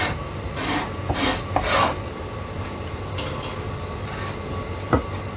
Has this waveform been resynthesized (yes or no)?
no